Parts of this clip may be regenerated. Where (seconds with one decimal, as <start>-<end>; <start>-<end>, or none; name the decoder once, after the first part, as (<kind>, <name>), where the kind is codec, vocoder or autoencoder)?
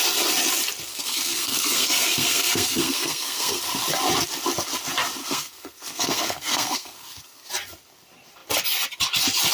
0.9-3.6 (codec, SNAC); 5.2-7.5